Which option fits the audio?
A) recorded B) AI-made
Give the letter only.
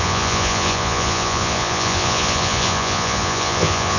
B